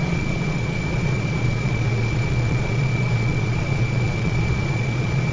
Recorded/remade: remade